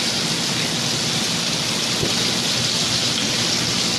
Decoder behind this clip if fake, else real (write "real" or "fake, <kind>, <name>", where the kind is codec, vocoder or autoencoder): real